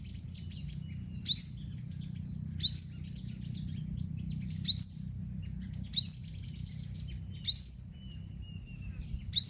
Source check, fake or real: real